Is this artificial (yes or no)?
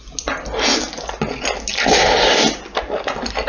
no